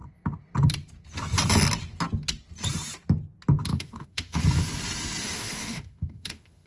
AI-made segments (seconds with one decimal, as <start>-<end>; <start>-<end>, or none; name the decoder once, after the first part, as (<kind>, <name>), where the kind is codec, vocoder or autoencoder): 3.7-4.4 (autoencoder, DAC-VAE); 5.2-6.7